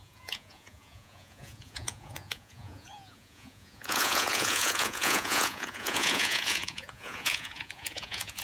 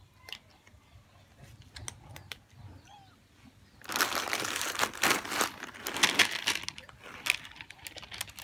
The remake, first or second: first